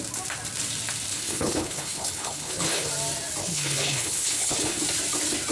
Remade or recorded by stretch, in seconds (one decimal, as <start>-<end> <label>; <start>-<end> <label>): 0.0-1.1 recorded; 1.1-2.9 remade; 2.9-3.4 recorded; 3.4-4.8 remade; 4.8-5.5 recorded